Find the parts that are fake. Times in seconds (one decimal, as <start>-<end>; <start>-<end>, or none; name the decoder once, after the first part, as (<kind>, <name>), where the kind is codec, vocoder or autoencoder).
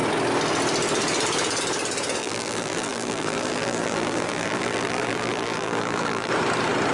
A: 2.2-6.3 (vocoder, BigVGAN v2)